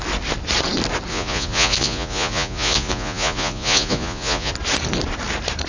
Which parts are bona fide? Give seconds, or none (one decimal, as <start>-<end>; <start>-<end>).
0.0-1.1; 4.5-5.7